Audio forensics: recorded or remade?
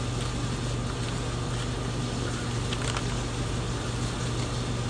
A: recorded